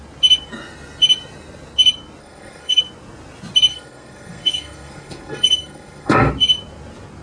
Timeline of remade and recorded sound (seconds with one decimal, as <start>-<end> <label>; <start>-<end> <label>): 0.0-2.2 recorded; 2.2-2.8 remade; 2.8-3.7 recorded; 3.7-6.3 remade; 6.3-7.2 recorded

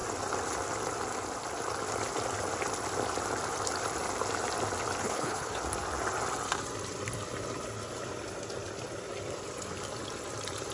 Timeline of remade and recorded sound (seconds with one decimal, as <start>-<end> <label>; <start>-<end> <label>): 0.0-5.0 recorded; 5.0-5.6 remade; 5.6-10.7 recorded